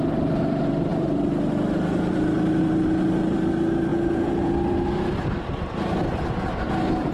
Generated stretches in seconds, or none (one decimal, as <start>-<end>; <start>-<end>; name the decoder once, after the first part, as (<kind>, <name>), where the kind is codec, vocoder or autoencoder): 3.9-4.5 (vocoder, Vocos)